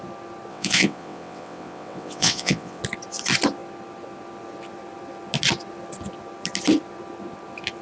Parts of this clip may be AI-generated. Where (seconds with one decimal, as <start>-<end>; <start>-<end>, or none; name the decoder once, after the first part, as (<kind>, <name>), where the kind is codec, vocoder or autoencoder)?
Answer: 0.5-2.8 (vocoder, WaveNeXt)